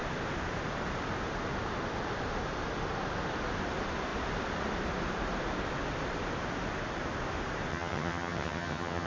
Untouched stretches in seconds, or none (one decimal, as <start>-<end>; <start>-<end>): 0.0-7.7